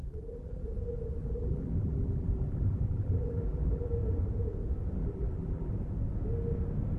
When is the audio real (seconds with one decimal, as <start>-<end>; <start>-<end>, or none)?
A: 0.6-1.2; 3.9-5.0; 5.7-7.0